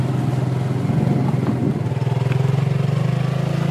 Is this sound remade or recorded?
recorded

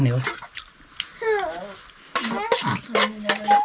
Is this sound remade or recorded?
recorded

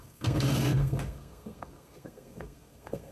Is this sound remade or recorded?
remade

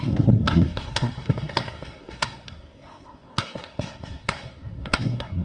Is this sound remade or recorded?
remade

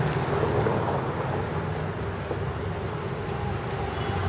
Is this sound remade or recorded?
recorded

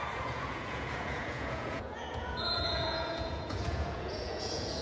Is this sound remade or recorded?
remade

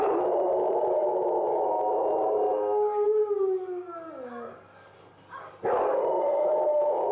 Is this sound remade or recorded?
recorded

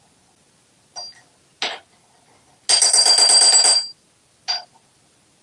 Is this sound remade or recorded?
recorded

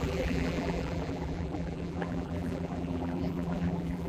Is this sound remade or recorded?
remade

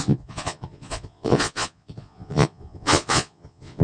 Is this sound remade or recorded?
remade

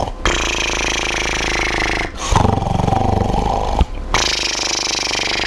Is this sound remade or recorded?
recorded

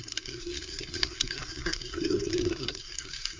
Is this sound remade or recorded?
remade